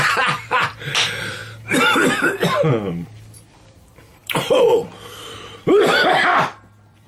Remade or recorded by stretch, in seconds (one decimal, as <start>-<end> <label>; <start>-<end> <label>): 0.0-1.4 remade; 1.4-2.7 recorded; 2.7-7.1 remade